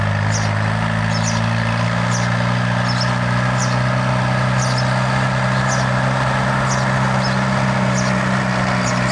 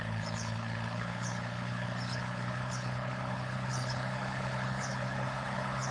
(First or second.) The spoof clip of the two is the second